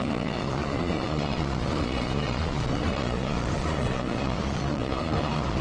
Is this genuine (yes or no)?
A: no